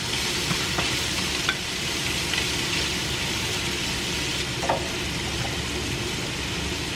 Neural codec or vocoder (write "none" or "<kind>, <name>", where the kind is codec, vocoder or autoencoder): none